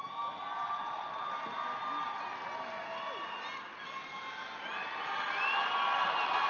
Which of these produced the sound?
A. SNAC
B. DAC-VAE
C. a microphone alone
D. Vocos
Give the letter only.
C